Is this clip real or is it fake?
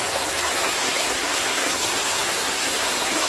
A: fake